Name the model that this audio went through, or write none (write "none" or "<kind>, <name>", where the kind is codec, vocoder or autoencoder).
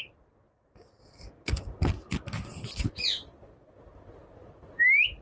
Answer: none